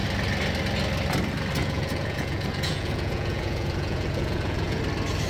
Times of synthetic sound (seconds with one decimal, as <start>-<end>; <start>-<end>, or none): 1.6-4.8